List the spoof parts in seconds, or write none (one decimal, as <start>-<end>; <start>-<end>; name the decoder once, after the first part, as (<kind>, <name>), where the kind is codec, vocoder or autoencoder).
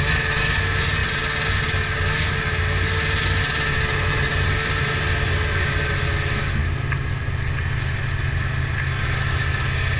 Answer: none